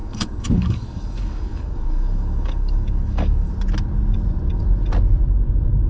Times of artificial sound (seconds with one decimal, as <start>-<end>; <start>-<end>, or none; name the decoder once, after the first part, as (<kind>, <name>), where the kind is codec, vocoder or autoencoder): 0.0-3.5 (codec, DAC)